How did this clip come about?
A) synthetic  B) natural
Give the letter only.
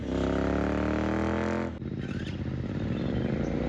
B